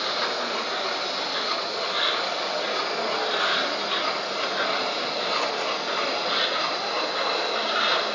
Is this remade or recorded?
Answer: recorded